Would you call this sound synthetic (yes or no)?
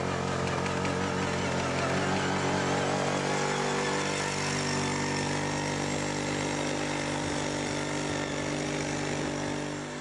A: no